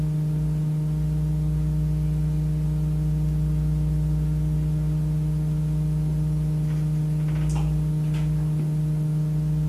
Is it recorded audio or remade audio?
recorded